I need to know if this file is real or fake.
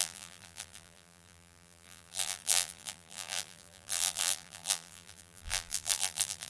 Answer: fake